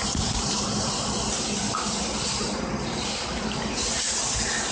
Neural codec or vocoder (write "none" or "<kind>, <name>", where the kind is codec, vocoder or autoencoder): none